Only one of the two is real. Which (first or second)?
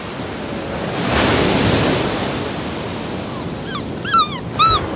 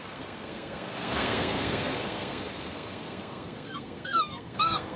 first